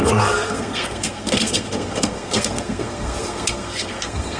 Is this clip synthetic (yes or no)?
yes